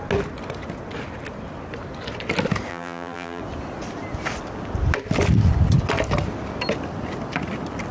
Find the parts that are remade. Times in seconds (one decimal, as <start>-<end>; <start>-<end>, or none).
2.7-3.4